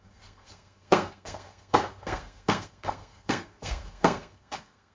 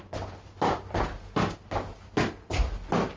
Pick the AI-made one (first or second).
first